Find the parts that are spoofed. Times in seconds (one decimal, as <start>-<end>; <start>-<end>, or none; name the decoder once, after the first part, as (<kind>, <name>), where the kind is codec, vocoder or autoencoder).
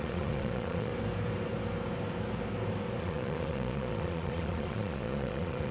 0.0-0.9 (vocoder, Vocos); 3.0-5.7